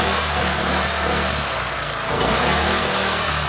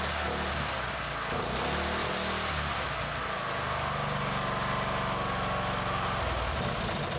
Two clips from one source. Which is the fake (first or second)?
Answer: first